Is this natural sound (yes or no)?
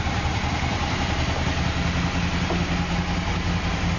yes